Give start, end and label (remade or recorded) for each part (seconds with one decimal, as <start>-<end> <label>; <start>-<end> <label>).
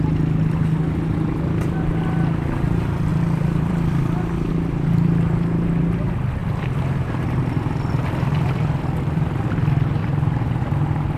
0.0-3.1 recorded; 3.1-4.5 remade; 4.5-6.4 recorded; 6.4-9.5 remade; 9.5-10.0 recorded; 10.0-10.6 remade; 10.6-11.2 recorded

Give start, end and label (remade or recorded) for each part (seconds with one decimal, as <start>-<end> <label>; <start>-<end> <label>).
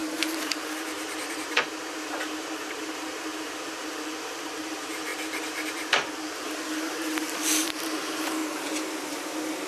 0.0-8.4 remade; 8.4-9.7 recorded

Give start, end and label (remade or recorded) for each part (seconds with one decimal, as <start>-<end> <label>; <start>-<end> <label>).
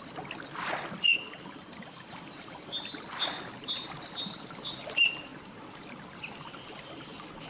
0.0-7.5 recorded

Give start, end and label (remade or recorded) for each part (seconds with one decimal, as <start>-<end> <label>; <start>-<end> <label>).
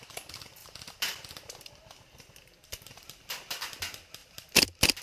0.0-0.6 recorded; 0.6-3.3 remade; 3.3-4.2 recorded; 4.2-5.0 remade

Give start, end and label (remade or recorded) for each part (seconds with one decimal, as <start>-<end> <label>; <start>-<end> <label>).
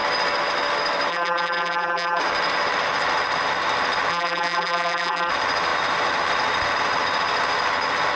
0.0-1.1 recorded; 1.1-2.2 remade; 2.2-4.1 recorded; 4.1-5.3 remade; 5.3-8.2 recorded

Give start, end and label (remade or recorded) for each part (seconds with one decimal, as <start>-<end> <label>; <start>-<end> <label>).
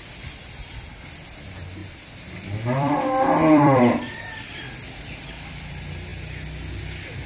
0.0-1.8 recorded; 1.8-3.8 remade; 3.8-6.1 recorded; 6.1-6.7 remade; 6.7-7.3 recorded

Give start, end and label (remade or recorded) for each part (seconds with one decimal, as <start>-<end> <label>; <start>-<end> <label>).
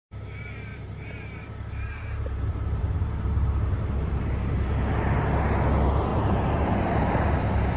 0.0-0.7 recorded; 0.7-4.7 remade; 4.7-6.1 recorded; 6.1-7.8 remade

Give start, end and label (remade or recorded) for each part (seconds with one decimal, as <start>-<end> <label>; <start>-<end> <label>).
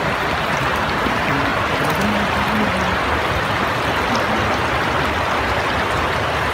0.0-6.5 recorded